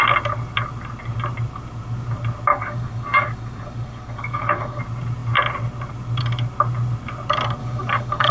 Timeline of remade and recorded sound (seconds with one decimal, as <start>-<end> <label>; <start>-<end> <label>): 0.0-2.5 recorded; 2.5-4.8 remade; 4.8-7.6 recorded; 7.6-8.3 remade